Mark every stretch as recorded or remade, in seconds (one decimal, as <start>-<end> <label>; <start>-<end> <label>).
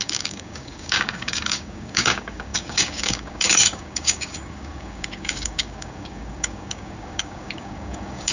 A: 0.0-8.3 remade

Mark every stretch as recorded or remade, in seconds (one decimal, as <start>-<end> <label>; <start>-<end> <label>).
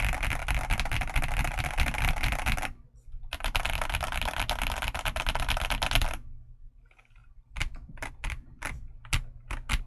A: 0.0-9.9 recorded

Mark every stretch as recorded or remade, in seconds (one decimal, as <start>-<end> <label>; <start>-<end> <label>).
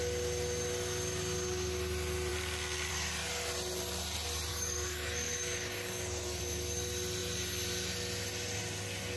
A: 0.0-4.5 recorded; 4.5-6.4 remade; 6.4-9.2 recorded